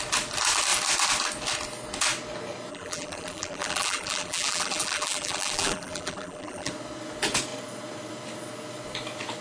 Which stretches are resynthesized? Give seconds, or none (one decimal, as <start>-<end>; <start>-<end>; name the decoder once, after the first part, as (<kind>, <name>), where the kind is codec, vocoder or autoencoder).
2.7-6.7 (vocoder, BigVGAN v2)